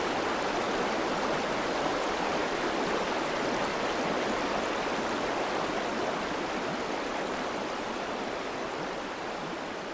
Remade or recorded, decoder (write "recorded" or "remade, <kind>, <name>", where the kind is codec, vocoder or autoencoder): recorded